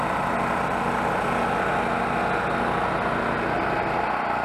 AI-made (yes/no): no